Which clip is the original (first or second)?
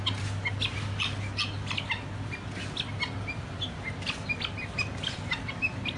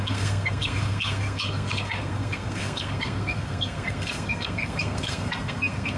first